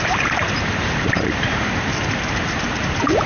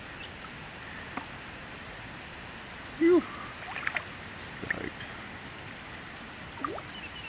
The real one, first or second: second